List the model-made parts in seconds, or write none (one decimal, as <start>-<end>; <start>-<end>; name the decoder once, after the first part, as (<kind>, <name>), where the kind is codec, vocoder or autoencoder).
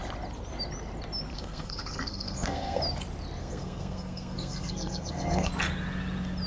1.3-2.8 (codec, SNAC); 3.4-5.5